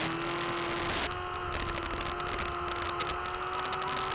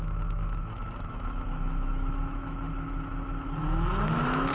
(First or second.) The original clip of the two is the first